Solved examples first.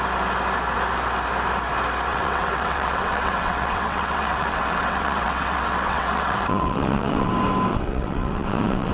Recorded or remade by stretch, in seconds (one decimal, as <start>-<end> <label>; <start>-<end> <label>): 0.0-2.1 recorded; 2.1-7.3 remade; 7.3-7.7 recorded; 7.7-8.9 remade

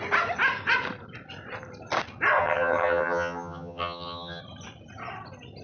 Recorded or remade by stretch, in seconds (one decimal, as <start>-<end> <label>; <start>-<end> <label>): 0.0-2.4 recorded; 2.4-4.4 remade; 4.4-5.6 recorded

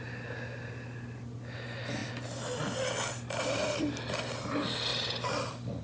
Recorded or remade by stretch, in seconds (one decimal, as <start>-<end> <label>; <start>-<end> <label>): 0.0-5.8 recorded

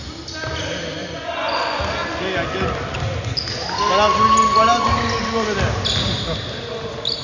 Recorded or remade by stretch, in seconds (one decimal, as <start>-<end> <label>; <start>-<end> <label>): 0.0-1.0 recorded; 1.0-1.8 remade; 1.8-7.2 recorded